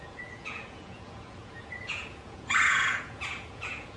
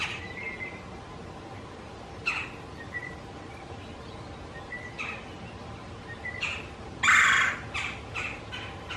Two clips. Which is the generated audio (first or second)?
first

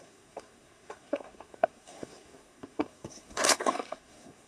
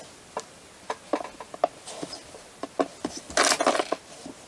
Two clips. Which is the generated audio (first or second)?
first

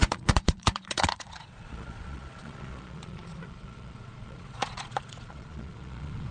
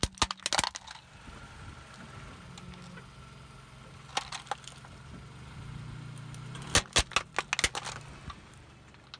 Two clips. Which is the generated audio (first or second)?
first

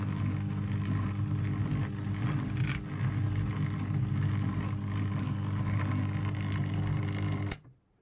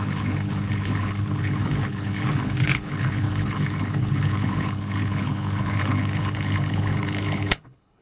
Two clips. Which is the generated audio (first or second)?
second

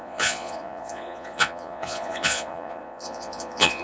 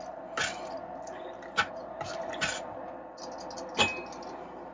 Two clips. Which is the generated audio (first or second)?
first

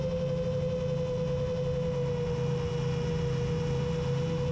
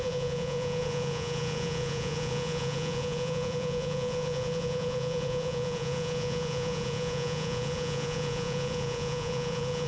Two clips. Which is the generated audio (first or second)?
second